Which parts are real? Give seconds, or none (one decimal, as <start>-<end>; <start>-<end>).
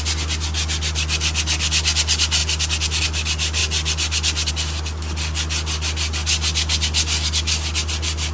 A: 0.0-8.3